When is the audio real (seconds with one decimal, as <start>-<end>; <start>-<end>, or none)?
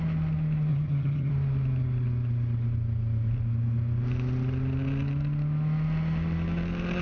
0.0-0.7; 1.3-7.0